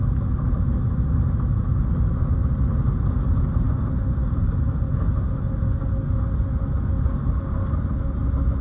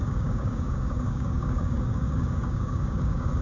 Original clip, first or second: first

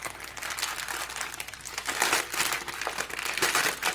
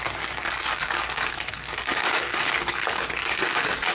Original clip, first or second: first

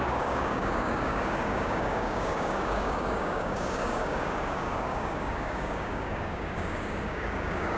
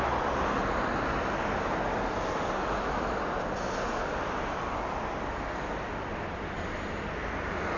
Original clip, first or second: second